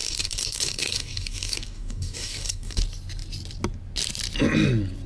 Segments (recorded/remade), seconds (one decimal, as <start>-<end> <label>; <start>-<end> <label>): 0.0-2.8 remade; 2.8-5.1 recorded